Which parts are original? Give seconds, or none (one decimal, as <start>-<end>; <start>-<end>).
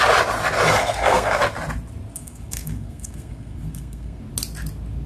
0.0-0.8; 1.4-2.1; 4.2-5.1